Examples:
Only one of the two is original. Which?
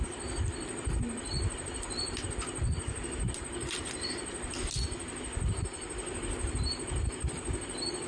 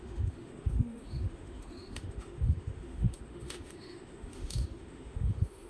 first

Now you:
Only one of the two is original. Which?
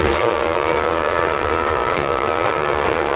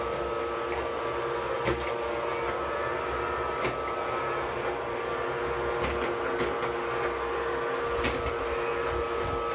second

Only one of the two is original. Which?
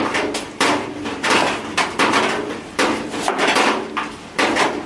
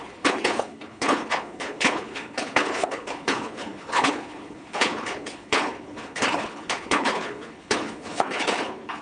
first